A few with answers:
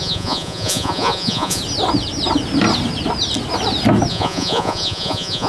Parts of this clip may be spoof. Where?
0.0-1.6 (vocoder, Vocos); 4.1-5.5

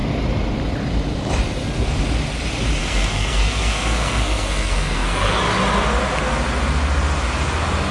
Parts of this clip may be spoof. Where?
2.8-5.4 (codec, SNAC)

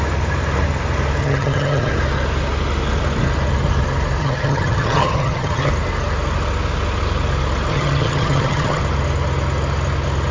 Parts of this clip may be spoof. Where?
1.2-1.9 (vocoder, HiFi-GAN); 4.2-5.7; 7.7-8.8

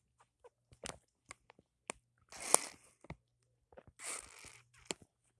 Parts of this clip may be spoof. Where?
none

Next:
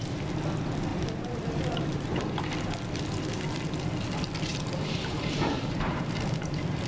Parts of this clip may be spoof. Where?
0.9-2.2 (vocoder, BigVGAN v2); 4.5-6.0

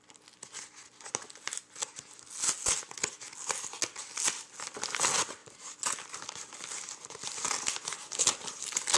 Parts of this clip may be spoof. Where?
none